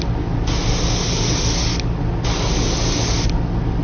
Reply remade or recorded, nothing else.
recorded